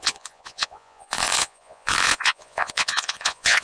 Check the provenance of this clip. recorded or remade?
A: remade